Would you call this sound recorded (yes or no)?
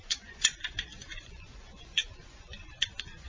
no